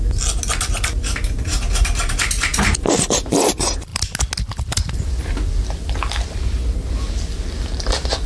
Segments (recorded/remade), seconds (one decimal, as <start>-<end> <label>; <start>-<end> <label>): 0.0-8.3 recorded